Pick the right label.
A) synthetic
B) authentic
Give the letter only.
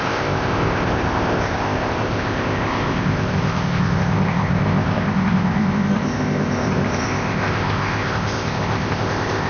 A